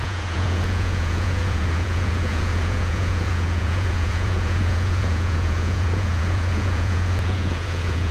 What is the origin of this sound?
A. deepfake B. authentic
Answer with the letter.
A